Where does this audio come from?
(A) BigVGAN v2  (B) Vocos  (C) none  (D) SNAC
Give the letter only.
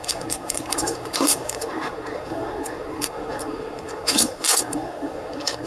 D